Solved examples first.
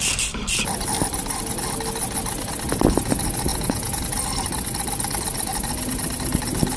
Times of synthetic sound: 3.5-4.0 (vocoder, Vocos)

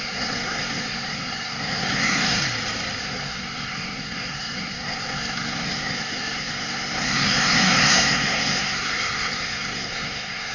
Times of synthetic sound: 0.0-2.4 (codec, SNAC); 3.0-10.5